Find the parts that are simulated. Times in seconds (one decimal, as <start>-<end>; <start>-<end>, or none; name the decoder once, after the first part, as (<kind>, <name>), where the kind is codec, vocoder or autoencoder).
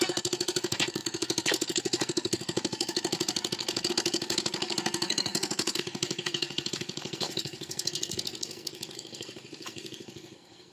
0.0-10.7 (codec, SNAC)